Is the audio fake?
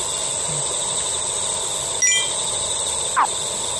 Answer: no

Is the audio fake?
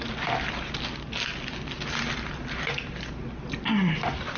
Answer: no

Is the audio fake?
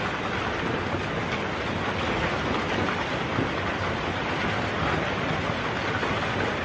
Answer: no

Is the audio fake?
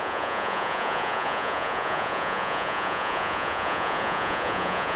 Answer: yes